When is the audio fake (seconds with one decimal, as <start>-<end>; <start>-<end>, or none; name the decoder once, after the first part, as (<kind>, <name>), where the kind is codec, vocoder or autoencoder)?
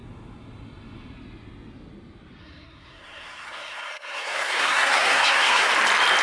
2.4-5.7 (codec, SNAC)